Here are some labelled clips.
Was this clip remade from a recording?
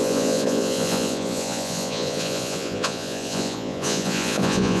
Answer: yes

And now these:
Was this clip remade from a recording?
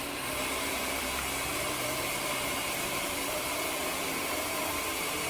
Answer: yes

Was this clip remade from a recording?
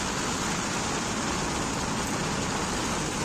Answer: no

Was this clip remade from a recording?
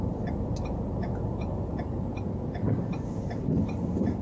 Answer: no